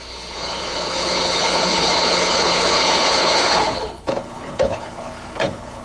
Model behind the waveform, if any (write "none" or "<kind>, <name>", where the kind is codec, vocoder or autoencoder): codec, HILCodec